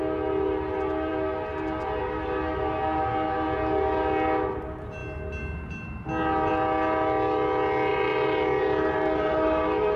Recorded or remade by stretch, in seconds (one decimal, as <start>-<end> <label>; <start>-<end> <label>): 0.0-7.9 recorded; 7.9-10.0 remade